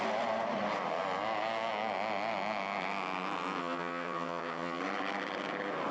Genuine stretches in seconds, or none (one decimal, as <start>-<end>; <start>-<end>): 0.0-3.6; 4.8-5.9